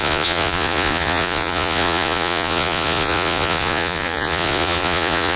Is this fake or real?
fake